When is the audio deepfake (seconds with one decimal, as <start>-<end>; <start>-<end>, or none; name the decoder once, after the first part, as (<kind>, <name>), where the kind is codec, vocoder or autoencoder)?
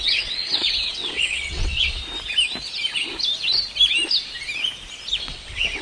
0.0-2.0 (vocoder, WaveNeXt); 5.2-5.8